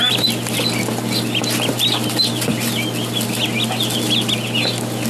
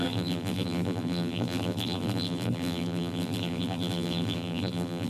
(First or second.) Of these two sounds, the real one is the first